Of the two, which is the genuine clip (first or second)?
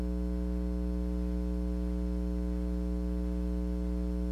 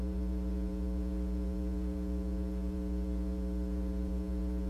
first